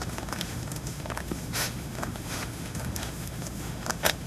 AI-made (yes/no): yes